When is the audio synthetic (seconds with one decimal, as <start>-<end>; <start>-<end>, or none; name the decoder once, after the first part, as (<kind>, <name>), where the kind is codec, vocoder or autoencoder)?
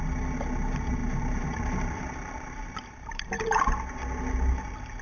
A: 1.0-4.0 (vocoder, BigVGAN v2)